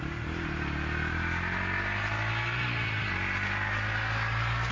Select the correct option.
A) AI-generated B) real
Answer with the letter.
B